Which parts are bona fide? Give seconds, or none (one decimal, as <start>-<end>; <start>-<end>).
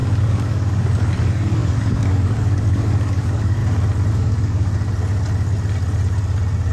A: 3.6-4.1; 4.7-6.7